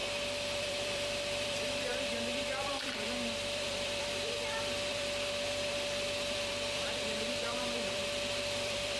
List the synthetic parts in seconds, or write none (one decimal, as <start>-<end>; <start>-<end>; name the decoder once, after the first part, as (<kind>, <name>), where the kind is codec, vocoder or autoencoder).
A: 0.6-1.9 (vocoder, BigVGAN v2); 2.4-9.0